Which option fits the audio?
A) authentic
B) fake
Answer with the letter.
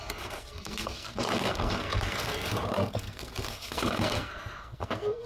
B